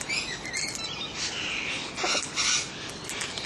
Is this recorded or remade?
recorded